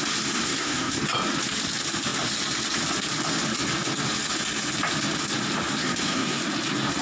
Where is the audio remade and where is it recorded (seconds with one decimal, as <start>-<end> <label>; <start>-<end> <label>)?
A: 0.0-0.4 recorded; 0.4-1.0 remade; 1.0-5.8 recorded; 5.8-6.4 remade; 6.4-7.0 recorded